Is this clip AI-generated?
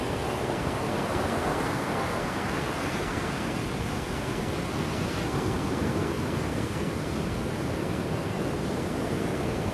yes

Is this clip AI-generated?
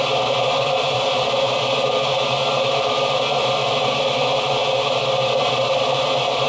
no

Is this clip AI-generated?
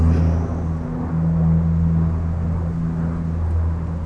no